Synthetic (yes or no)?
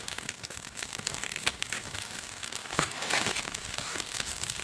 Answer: yes